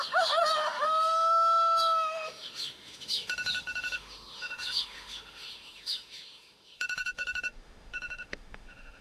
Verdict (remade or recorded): remade